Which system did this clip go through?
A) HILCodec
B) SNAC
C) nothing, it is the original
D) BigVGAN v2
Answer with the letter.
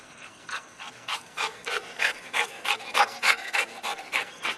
B